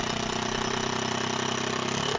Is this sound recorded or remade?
recorded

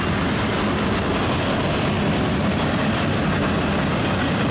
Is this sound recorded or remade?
recorded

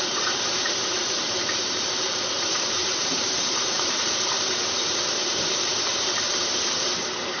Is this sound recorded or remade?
remade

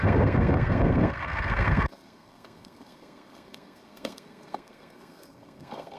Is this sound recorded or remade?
remade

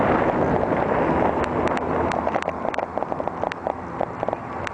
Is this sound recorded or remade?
recorded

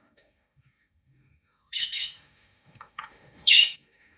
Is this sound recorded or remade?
remade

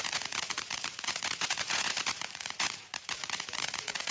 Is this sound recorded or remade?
remade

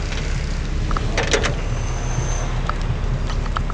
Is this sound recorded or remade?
recorded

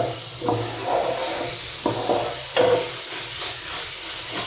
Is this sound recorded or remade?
recorded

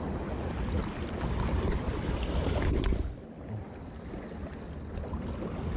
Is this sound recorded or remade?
recorded